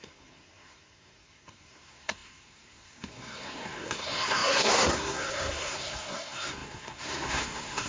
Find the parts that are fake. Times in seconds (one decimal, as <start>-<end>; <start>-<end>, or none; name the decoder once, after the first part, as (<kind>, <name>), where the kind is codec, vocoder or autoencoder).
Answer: 0.0-7.9 (codec, SNAC)